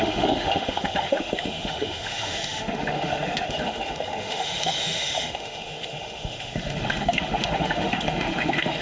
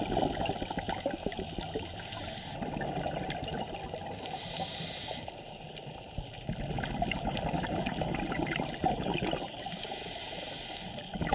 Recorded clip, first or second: second